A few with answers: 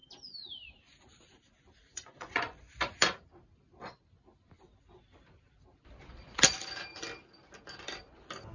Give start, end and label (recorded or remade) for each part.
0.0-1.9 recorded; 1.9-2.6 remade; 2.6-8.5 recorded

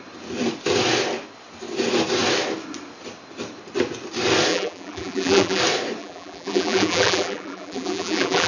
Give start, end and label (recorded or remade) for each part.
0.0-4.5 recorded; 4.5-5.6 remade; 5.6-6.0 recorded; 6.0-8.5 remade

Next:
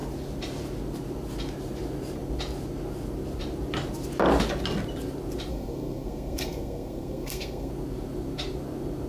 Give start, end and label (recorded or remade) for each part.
0.0-5.5 recorded; 5.5-7.7 remade; 7.7-9.1 recorded

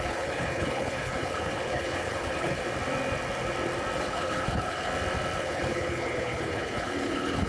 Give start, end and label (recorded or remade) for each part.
0.0-2.6 remade; 2.6-4.0 recorded; 4.0-4.9 remade; 4.9-5.4 recorded; 5.4-7.5 remade

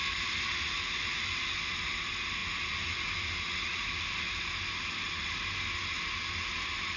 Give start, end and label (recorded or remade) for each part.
0.0-7.0 recorded